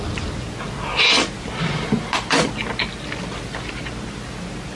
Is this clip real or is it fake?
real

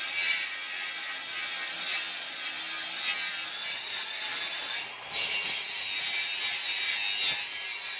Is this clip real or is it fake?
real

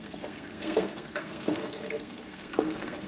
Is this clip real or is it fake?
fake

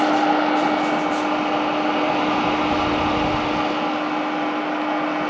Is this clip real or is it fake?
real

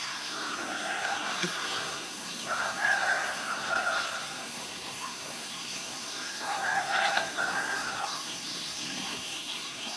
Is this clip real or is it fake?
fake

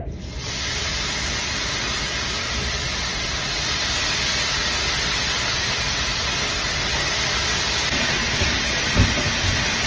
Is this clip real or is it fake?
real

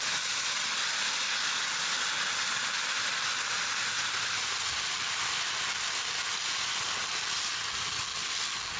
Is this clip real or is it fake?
real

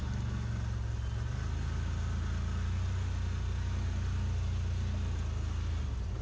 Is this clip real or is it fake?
real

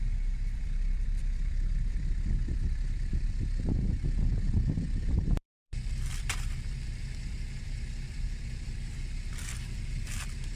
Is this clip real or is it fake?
fake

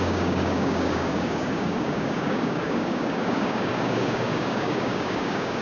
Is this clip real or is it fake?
fake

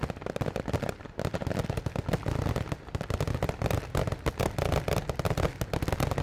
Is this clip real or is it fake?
real